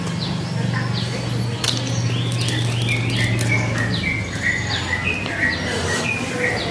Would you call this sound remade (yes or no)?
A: no